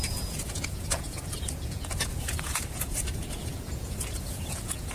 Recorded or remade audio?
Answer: remade